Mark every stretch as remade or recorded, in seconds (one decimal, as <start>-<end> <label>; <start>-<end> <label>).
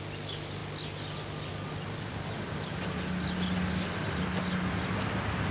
0.0-5.5 recorded